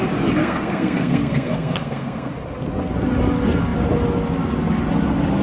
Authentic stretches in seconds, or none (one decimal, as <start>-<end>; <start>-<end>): 0.0-0.4; 2.3-5.4